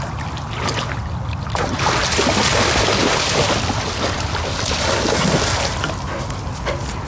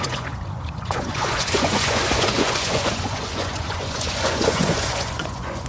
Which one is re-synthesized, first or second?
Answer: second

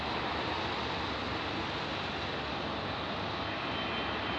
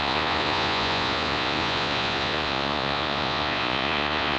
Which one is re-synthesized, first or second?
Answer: second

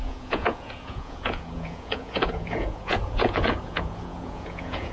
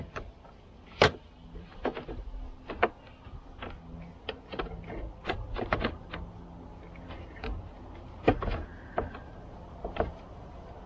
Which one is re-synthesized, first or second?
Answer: first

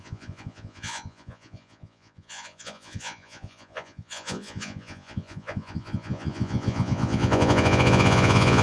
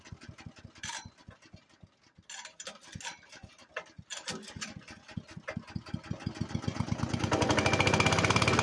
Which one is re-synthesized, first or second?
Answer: first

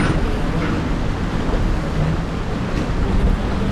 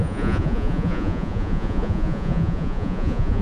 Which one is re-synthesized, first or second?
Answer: second